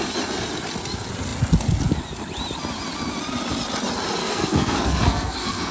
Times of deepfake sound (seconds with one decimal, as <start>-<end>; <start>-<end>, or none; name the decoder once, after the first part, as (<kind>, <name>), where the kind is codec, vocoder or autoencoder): 4.2-5.7 (codec, SNAC)